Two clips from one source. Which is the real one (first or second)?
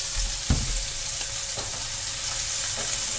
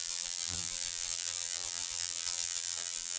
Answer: first